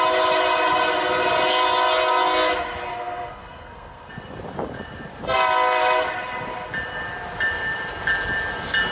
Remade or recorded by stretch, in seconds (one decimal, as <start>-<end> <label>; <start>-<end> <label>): 0.0-2.9 recorded; 2.9-4.1 remade; 4.1-8.9 recorded